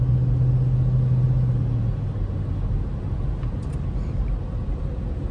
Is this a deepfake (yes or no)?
no